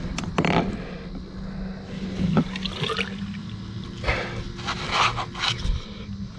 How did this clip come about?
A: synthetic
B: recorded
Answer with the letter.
B